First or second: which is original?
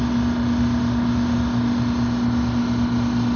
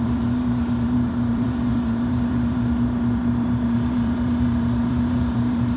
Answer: first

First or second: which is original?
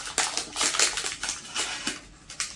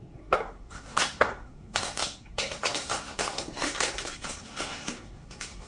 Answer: first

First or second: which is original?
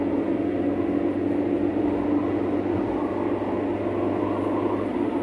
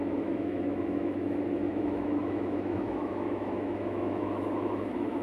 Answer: first